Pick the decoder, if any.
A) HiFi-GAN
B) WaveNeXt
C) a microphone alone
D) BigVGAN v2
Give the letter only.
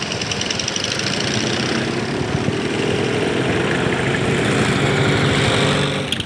C